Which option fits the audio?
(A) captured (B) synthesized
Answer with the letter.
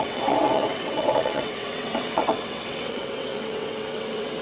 B